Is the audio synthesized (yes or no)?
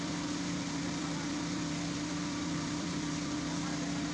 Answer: yes